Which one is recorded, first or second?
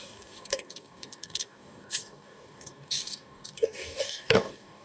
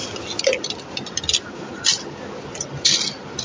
second